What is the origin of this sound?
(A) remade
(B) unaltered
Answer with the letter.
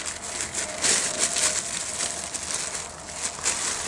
B